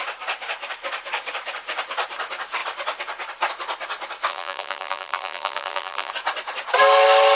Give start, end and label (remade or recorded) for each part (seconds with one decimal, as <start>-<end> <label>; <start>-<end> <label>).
0.0-4.3 recorded; 4.3-6.1 remade; 6.1-7.3 recorded